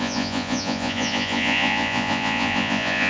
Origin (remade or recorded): remade